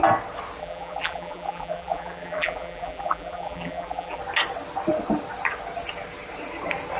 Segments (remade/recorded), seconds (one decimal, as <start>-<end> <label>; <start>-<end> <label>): 0.0-0.6 recorded; 0.6-4.2 remade; 4.2-7.0 recorded